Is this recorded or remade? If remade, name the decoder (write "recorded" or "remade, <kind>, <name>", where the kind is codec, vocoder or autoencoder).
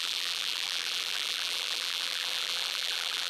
remade, vocoder, BigVGAN v2